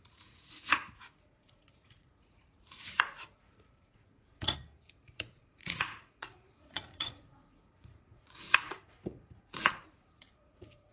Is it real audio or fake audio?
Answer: fake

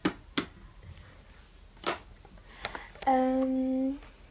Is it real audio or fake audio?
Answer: real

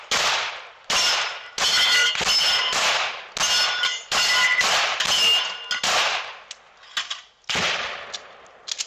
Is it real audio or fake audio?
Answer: real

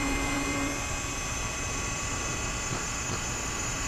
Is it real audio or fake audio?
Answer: fake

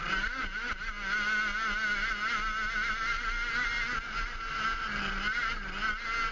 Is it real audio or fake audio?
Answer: real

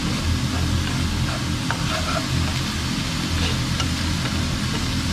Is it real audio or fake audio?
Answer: real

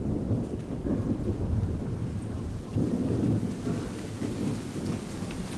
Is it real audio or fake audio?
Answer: real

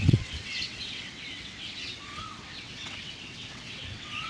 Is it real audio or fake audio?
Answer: fake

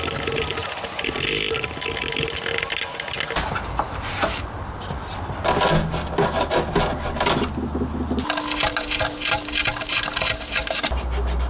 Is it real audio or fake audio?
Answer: real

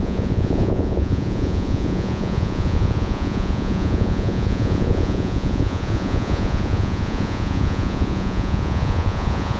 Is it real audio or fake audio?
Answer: fake